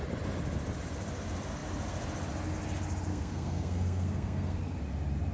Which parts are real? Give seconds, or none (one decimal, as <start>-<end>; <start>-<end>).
0.0-3.1; 4.6-5.3